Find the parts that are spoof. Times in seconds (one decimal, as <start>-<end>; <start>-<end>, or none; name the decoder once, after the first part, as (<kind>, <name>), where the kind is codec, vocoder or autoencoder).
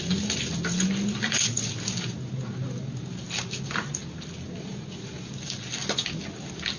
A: none